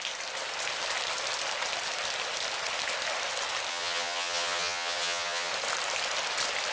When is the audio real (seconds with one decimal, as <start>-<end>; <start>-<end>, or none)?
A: 0.0-3.7; 5.5-6.7